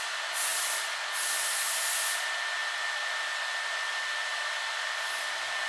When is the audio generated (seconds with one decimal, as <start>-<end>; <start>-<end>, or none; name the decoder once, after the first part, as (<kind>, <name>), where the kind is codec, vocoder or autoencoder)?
none